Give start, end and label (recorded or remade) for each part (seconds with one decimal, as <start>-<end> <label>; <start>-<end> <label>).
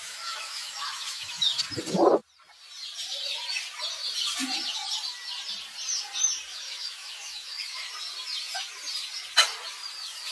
0.0-1.6 remade; 1.6-6.5 recorded; 6.5-7.9 remade; 7.9-10.3 recorded